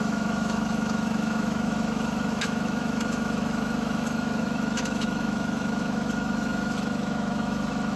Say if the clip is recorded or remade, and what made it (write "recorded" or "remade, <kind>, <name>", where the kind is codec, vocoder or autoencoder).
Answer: remade, autoencoder, DAC-VAE